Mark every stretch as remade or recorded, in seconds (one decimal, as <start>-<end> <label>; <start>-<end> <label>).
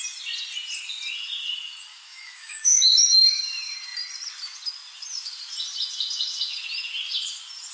0.0-1.9 recorded; 1.9-3.4 remade; 3.4-7.7 recorded